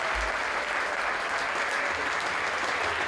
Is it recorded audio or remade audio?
recorded